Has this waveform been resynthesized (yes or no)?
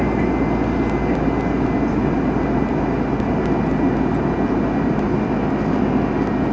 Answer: no